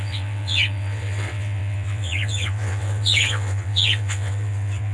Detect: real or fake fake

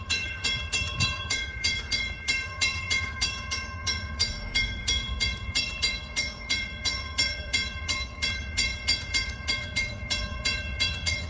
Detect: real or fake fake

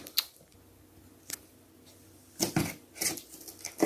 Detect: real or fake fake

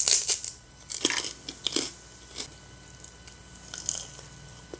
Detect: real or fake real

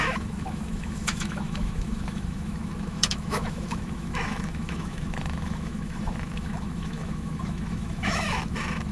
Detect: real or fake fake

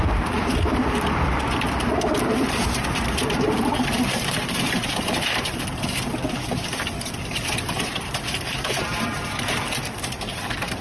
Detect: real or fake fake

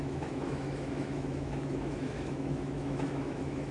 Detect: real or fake fake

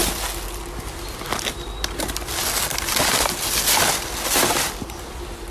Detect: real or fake real